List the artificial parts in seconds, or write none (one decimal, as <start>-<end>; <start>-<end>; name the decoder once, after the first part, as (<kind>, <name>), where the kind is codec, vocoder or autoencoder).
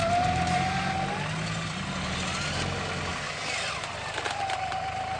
none